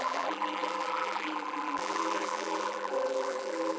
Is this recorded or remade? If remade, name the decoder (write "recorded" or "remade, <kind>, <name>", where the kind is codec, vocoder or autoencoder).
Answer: remade, vocoder, BigVGAN v2